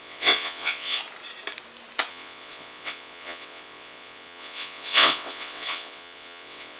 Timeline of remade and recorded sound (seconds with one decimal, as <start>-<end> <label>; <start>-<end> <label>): 0.0-1.0 remade; 1.0-2.1 recorded; 2.1-6.8 remade